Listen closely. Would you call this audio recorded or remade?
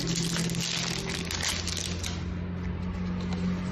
recorded